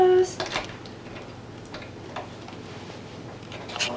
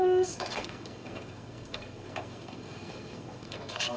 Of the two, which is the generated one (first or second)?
second